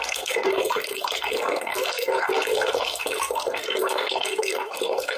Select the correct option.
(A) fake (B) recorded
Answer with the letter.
A